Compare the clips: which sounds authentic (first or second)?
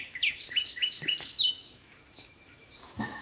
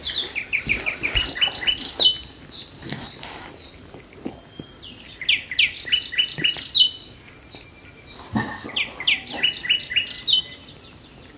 second